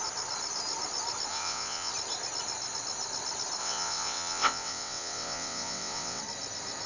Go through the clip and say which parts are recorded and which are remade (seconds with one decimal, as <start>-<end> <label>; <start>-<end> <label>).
0.0-1.3 recorded; 1.3-1.9 remade; 1.9-3.6 recorded; 3.6-6.2 remade; 6.2-6.9 recorded